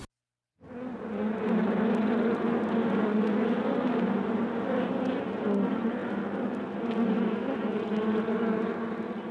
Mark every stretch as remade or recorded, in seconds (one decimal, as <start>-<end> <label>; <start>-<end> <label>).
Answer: 0.0-9.3 recorded